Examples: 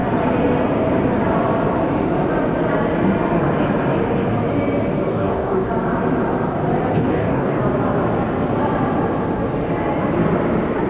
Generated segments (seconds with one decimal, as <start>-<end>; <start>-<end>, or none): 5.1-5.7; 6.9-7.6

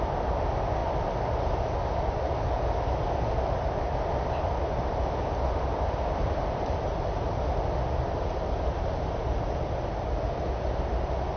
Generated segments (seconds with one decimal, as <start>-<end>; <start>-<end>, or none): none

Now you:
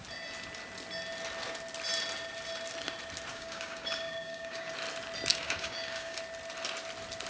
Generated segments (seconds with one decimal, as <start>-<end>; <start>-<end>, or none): 3.3-4.7; 5.3-6.2